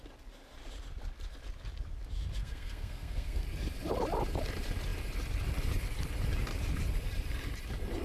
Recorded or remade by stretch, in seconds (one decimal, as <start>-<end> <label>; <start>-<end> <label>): 0.0-2.4 recorded; 2.4-3.4 remade; 3.4-8.0 recorded